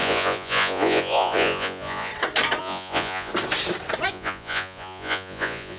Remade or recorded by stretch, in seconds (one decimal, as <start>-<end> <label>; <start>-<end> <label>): 0.0-2.1 remade; 2.1-2.6 recorded; 2.6-3.3 remade; 3.3-4.1 recorded; 4.1-5.8 remade